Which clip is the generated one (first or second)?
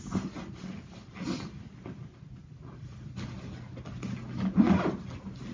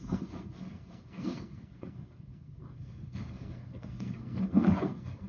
second